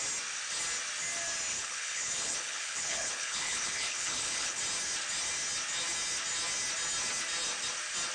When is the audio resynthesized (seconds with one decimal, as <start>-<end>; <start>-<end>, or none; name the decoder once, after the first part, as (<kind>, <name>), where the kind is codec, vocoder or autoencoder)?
1.5-4.6 (codec, HILCodec)